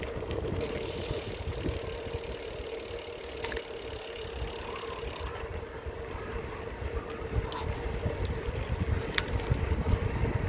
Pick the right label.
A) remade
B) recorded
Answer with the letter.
B